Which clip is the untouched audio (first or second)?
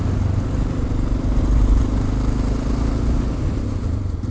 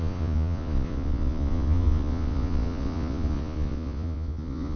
first